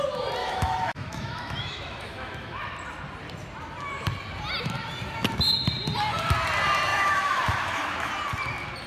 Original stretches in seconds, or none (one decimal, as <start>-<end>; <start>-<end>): 0.0-0.4; 2.6-6.9; 8.1-8.9